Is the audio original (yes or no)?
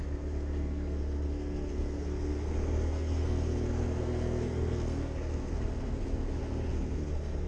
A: no